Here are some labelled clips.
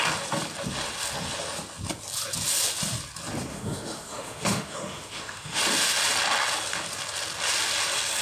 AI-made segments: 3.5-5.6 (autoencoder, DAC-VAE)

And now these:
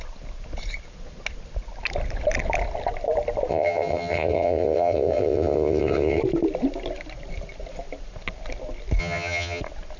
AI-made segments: 3.5-6.2 (vocoder, HiFi-GAN); 9.0-9.6

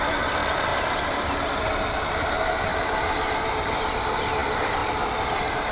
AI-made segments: 0.0-5.7 (vocoder, BigVGAN v2)

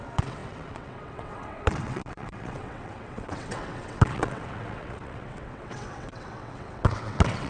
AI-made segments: 0.0-7.5 (vocoder, WaveNeXt)

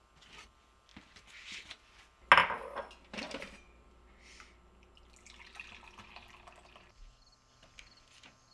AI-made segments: none

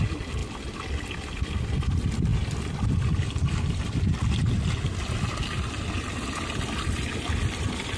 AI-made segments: none

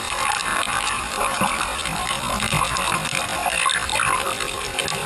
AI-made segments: 0.5-1.4 (vocoder, BigVGAN v2)

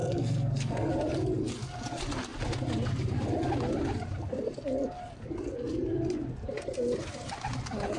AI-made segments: 0.0-0.9 (codec, SNAC)